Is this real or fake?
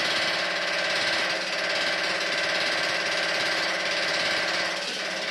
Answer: real